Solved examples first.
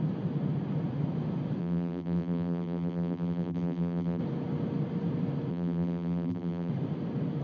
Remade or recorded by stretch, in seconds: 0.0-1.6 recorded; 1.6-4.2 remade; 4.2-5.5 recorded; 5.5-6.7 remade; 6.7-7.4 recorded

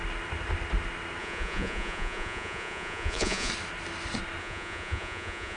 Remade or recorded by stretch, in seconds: 0.0-1.2 recorded; 1.2-3.5 remade; 3.5-4.4 recorded; 4.4-5.6 remade